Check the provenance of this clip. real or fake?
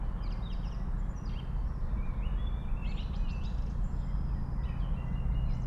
real